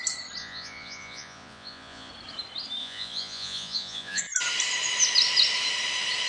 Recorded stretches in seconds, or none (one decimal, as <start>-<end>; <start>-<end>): 0.0-0.4; 2.1-2.8; 4.2-6.3